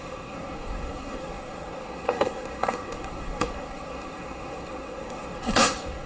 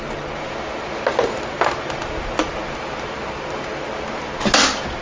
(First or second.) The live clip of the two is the second